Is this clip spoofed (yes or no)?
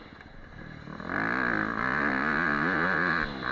no